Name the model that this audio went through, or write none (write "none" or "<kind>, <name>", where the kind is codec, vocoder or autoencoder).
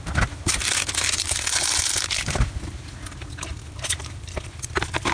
none